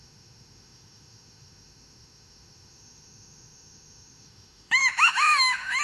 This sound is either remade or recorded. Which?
remade